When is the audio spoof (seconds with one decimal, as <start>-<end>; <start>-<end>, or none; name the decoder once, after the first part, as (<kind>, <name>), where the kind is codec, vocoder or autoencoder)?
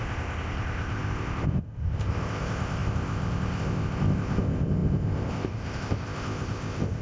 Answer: 0.0-7.0 (codec, ZipCodec)